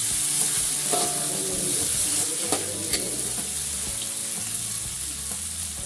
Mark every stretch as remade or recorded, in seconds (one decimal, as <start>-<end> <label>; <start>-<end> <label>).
0.0-5.9 recorded